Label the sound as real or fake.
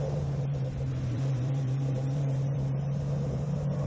fake